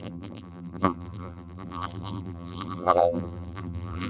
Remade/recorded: remade